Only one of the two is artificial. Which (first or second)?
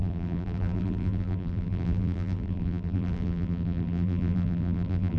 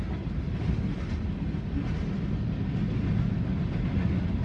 first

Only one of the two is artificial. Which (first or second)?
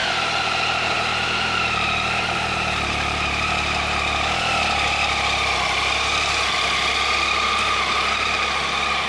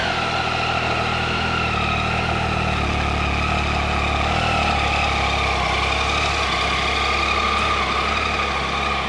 first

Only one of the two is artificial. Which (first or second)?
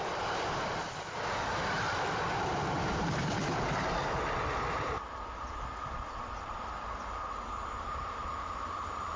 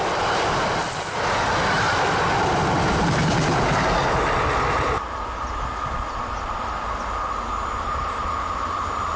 first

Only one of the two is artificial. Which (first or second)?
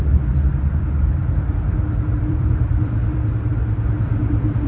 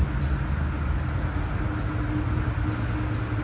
first